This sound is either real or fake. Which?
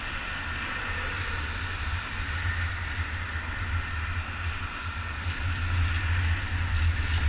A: real